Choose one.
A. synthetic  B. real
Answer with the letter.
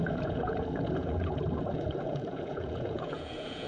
A